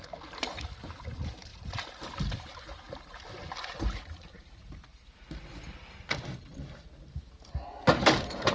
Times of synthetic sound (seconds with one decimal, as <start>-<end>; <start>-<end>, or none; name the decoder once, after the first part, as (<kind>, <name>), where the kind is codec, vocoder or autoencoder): none